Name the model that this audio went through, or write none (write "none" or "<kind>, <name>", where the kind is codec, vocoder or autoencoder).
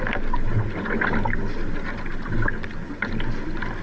none